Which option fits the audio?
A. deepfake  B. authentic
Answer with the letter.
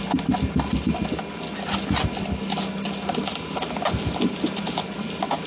B